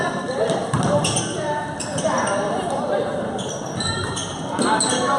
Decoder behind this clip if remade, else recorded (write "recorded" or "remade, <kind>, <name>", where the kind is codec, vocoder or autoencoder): recorded